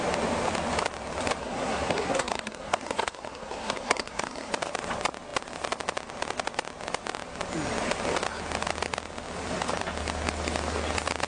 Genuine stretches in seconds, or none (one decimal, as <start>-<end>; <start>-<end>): 0.0-1.4; 4.5-11.3